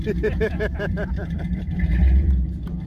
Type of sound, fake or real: fake